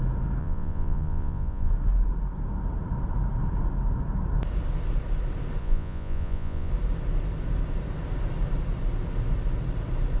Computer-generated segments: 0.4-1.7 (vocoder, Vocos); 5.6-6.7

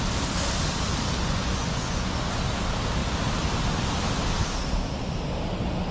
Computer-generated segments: 1.2-2.4 (vocoder, Vocos)

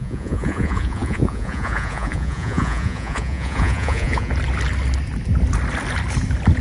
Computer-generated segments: 0.0-4.3 (vocoder, Vocos)

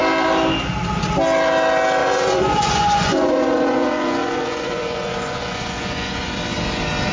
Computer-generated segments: 2.0-6.3 (vocoder, Vocos)

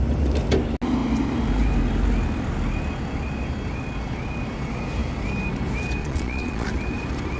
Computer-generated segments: 6.0-6.7 (vocoder, Vocos)

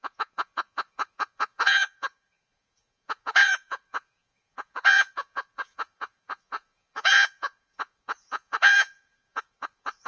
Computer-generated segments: 0.0-10.1 (vocoder, Vocos)